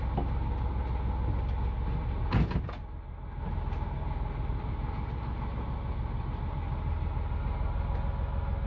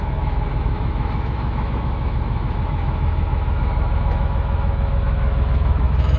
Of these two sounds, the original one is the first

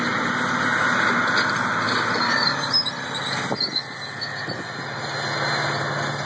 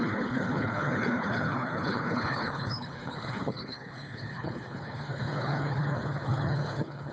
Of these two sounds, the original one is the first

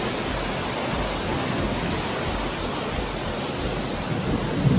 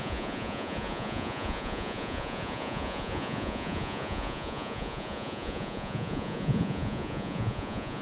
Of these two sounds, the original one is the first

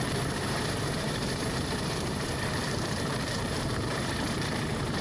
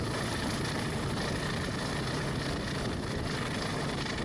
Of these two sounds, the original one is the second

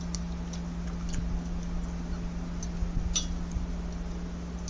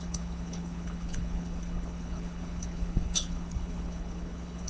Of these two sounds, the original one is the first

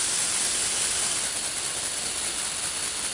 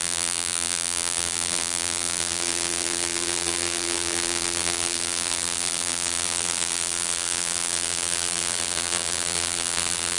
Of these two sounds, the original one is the first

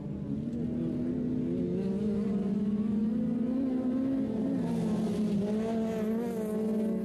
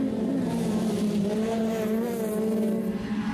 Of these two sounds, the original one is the first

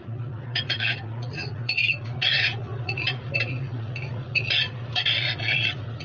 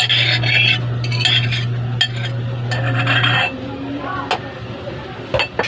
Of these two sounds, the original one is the second